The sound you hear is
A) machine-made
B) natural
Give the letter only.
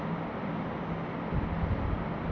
B